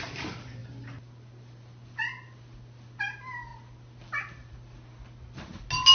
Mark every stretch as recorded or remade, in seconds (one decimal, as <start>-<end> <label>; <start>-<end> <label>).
0.0-5.9 recorded